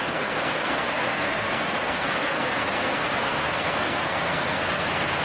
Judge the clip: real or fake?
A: fake